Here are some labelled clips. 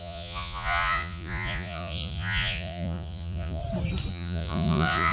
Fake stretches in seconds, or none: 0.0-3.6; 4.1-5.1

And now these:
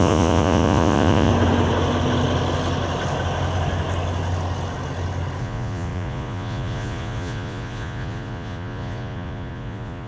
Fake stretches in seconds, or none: 0.0-1.3; 5.4-10.1

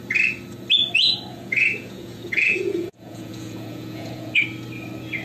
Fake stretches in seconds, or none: 1.3-4.4